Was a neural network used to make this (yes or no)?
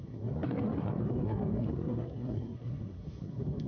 yes